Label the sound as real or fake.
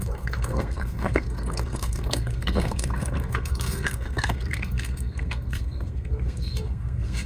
fake